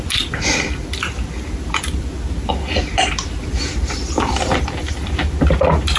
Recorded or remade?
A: recorded